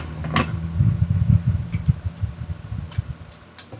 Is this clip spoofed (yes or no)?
no